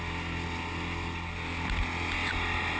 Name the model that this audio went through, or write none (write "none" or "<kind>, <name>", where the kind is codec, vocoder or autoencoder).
none